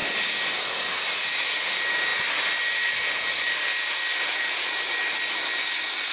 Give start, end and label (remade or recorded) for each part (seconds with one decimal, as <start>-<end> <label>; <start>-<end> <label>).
0.0-6.1 recorded